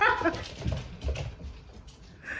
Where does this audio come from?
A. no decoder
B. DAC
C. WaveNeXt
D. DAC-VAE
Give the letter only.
A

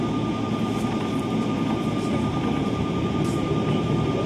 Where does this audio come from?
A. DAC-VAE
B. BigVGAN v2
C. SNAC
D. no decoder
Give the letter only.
B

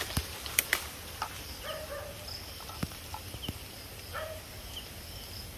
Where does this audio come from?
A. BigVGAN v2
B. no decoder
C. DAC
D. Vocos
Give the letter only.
B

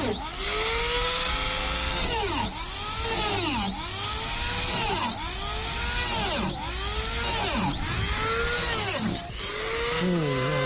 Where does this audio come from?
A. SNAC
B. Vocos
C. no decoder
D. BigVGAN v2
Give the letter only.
C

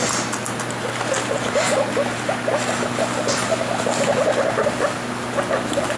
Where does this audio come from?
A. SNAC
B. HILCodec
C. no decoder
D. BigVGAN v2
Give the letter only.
C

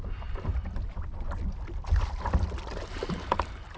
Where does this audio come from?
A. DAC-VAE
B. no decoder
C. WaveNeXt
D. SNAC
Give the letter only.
B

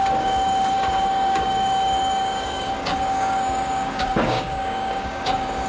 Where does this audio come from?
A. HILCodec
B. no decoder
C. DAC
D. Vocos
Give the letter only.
C